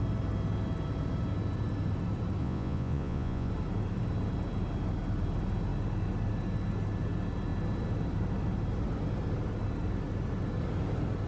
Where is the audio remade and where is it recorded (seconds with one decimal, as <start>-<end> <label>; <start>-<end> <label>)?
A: 0.0-2.4 recorded; 2.4-3.5 remade; 3.5-11.3 recorded